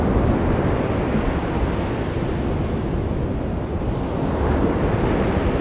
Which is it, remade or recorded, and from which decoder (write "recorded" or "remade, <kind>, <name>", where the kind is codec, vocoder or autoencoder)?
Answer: recorded